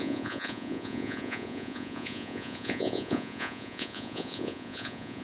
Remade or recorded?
remade